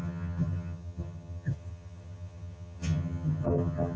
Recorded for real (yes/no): no